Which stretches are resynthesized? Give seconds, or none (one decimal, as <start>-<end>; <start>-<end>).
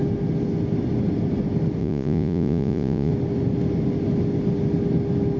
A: 1.8-3.1